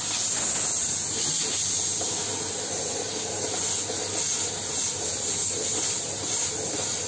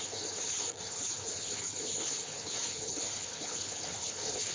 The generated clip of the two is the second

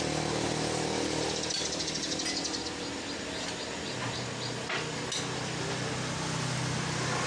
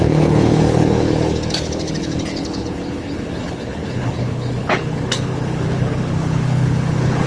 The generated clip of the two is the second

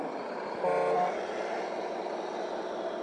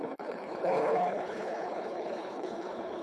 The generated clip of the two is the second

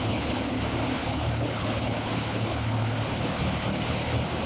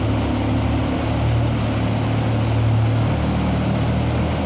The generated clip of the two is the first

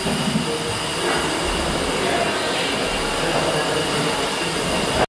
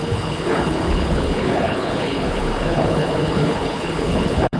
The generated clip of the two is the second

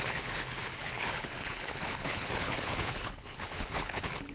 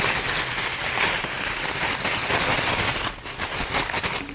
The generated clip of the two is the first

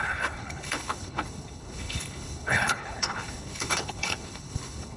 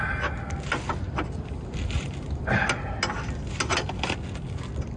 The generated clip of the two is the first